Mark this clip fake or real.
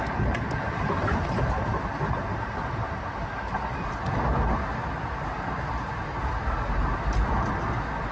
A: real